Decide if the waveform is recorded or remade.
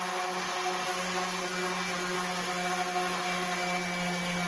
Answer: recorded